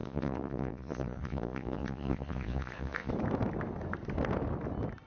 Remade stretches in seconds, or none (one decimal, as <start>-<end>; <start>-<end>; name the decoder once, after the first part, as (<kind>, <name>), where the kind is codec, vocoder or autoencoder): 0.0-3.1 (vocoder, Vocos)